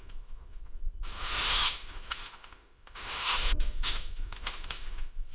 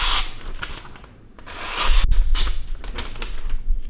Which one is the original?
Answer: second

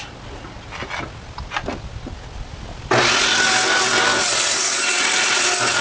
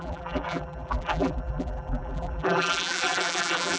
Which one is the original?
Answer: first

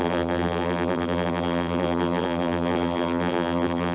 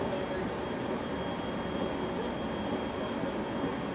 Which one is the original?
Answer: second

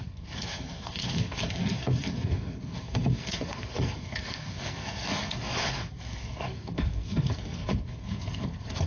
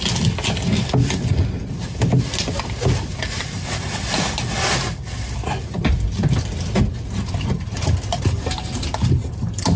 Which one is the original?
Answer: second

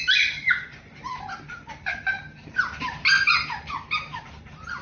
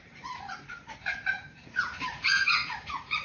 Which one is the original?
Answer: first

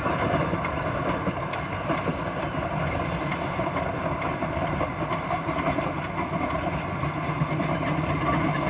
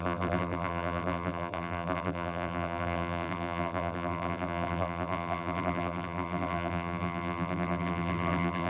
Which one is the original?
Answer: first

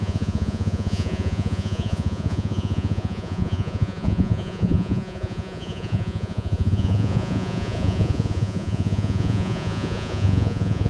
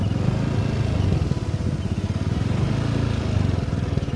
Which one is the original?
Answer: second